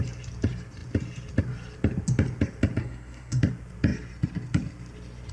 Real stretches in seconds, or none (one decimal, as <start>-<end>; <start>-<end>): 0.0-2.8; 3.4-5.3